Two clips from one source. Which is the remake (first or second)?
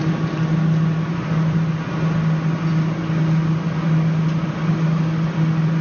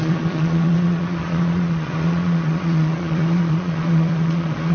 second